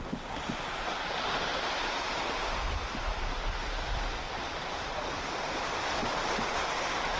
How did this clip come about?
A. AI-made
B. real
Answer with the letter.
B